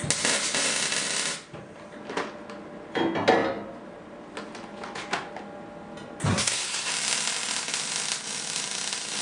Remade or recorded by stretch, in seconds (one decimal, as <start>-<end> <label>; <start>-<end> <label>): 0.0-6.3 recorded; 6.3-6.9 remade; 6.9-9.2 recorded